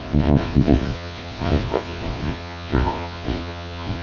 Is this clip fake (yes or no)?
yes